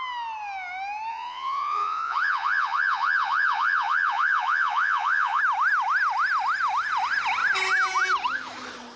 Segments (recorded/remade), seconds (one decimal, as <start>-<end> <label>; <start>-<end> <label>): 0.0-1.1 recorded; 1.1-5.4 remade; 5.4-9.0 recorded